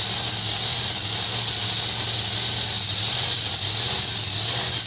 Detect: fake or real real